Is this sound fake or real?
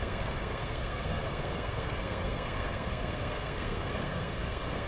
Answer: fake